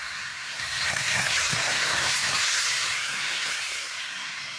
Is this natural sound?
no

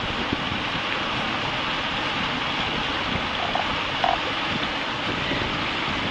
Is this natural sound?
yes